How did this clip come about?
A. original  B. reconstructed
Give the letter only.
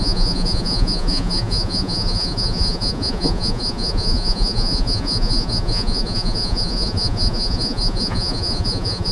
B